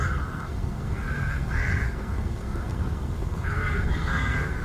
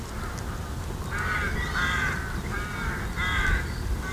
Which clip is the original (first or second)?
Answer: second